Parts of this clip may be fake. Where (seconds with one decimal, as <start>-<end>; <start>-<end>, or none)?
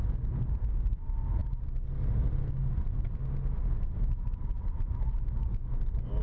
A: none